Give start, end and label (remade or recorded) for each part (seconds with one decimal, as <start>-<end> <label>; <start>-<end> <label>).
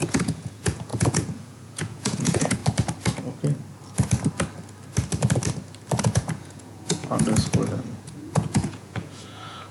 0.0-2.6 remade; 2.6-6.0 recorded; 6.0-9.7 remade